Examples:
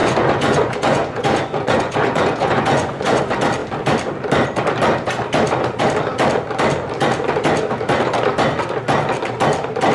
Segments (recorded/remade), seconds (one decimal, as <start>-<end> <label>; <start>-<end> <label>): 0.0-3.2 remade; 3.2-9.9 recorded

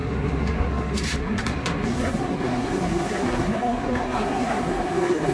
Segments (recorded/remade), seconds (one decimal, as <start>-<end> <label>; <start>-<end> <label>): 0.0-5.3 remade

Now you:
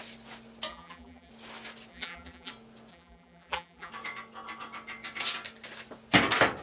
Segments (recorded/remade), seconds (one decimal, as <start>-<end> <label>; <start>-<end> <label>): 0.0-0.7 recorded; 0.7-1.3 remade; 1.3-1.9 recorded; 1.9-2.5 remade; 2.5-2.9 recorded; 2.9-3.9 remade; 3.9-6.6 recorded

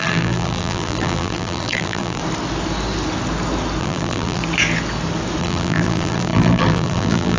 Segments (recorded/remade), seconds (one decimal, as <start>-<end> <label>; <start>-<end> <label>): 0.0-2.2 remade; 2.2-3.8 recorded; 3.8-4.4 remade; 4.4-5.4 recorded; 5.4-7.4 remade

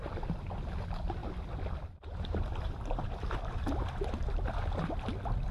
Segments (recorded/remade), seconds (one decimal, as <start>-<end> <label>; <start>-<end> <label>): 0.0-1.2 recorded; 1.2-4.5 remade; 4.5-5.5 recorded